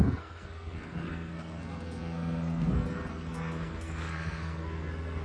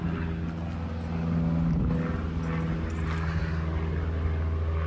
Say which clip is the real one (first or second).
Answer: second